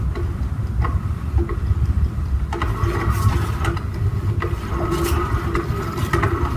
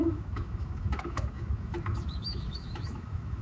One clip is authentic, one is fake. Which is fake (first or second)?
second